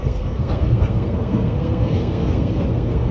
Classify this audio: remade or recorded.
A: remade